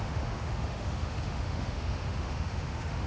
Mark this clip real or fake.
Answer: fake